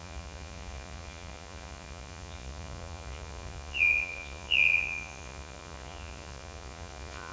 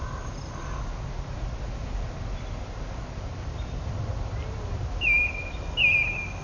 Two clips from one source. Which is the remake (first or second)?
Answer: first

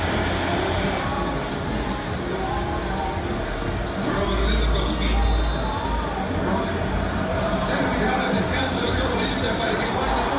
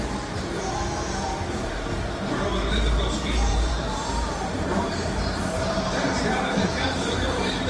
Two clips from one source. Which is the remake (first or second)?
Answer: second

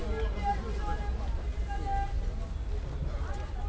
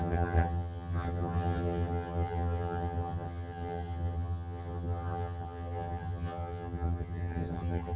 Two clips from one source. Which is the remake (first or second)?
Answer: second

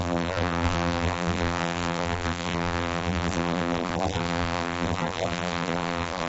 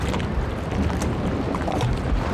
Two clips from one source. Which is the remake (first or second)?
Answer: first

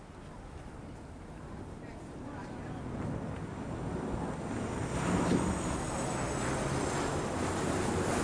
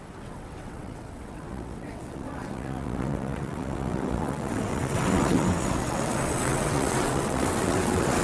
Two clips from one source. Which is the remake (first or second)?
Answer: second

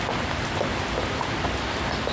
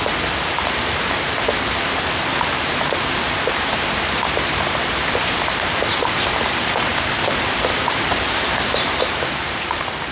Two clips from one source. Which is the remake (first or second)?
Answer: second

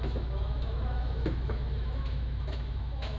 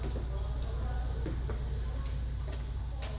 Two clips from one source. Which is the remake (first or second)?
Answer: first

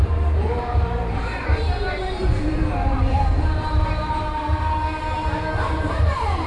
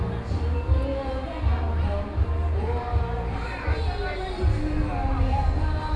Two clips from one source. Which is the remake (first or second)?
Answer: first